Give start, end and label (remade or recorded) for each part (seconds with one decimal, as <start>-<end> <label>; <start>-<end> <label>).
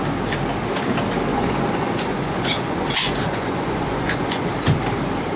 0.0-1.3 recorded; 1.3-4.5 remade; 4.5-5.4 recorded